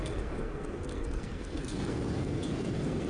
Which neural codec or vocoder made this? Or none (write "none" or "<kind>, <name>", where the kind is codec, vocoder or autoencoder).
codec, SNAC